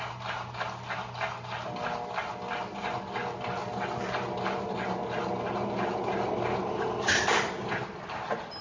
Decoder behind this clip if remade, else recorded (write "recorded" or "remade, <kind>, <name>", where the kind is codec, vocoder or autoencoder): recorded